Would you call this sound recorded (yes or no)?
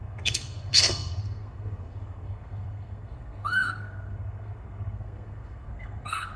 no